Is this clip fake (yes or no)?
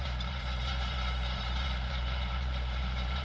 yes